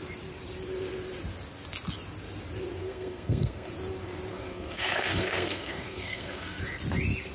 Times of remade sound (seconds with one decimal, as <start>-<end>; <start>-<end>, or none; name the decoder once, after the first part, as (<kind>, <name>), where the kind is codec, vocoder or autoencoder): 2.8-3.7 (codec, SNAC); 4.3-6.6